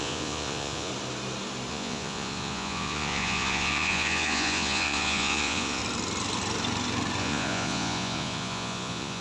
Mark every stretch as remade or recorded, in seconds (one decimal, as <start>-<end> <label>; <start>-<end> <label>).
0.0-0.9 remade; 0.9-1.7 recorded; 1.7-5.8 remade; 5.8-7.2 recorded; 7.2-9.2 remade